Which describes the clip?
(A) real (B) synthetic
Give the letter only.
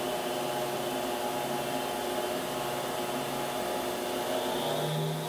A